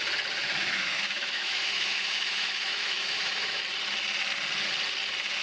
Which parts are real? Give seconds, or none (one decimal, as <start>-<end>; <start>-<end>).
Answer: 0.0-0.4; 3.6-5.4